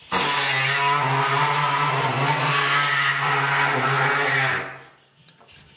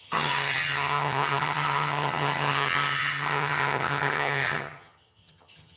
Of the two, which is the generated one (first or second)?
second